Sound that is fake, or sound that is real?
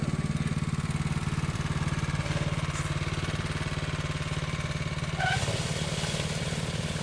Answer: real